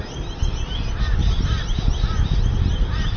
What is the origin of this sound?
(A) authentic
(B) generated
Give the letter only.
A